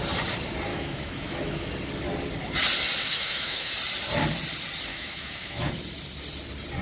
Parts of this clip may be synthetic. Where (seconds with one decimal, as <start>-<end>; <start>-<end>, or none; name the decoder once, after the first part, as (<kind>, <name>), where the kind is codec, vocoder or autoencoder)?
0.7-1.7 (autoencoder, DAC-VAE); 3.0-3.7; 4.9-5.7